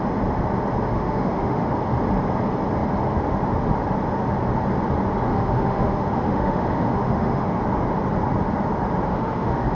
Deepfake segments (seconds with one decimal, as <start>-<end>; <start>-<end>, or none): 0.9-1.7; 5.3-7.6; 9.1-9.7